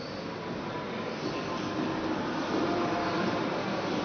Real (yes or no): yes